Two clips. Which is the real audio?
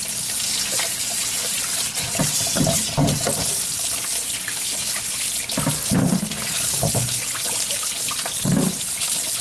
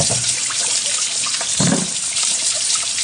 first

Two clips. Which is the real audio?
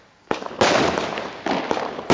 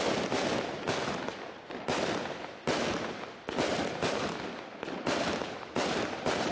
first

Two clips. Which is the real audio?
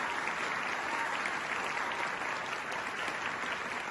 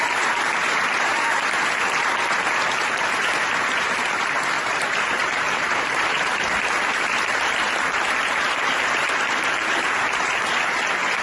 first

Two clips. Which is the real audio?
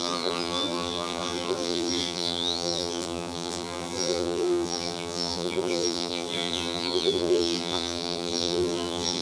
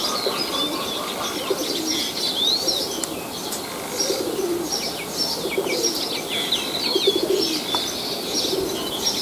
second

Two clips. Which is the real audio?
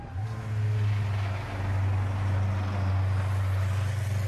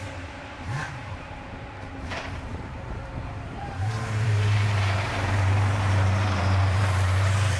first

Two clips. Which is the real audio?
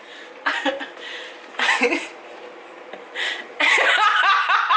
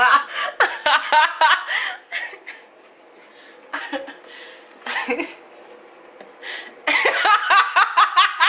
second